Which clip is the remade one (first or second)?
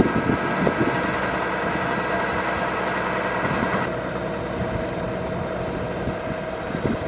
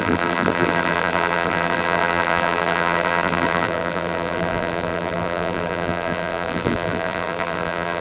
second